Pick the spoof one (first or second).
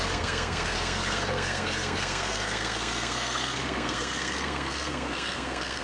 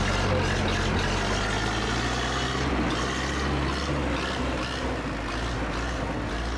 first